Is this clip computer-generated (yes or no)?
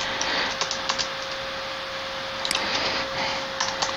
no